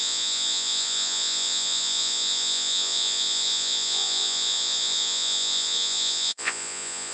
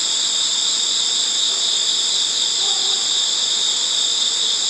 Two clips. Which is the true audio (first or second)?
second